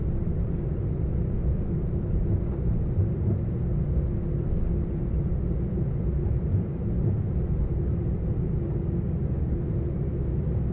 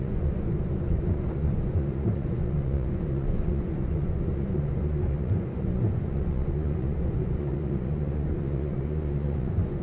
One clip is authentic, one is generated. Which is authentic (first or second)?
first